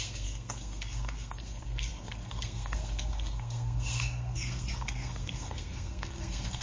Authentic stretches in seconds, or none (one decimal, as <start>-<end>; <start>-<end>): none